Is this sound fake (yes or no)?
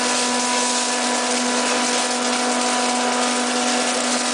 no